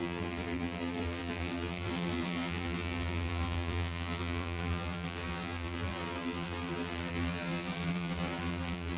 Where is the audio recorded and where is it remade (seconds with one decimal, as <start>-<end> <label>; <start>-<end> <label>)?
0.0-9.0 remade